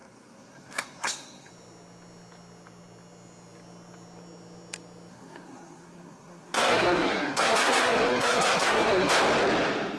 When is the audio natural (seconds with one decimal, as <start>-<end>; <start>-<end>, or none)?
1.5-5.1; 9.1-10.0